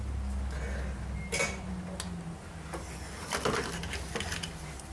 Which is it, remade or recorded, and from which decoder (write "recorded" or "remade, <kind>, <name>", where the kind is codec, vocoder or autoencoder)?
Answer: recorded